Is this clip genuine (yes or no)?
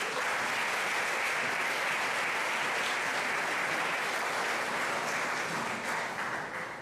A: yes